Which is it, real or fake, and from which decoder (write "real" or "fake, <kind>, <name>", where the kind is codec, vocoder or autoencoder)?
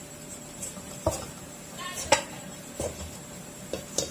fake, vocoder, BigVGAN v2